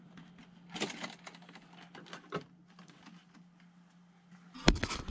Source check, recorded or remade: recorded